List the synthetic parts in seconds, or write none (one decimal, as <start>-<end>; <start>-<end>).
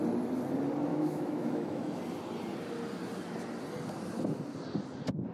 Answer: 0.9-2.0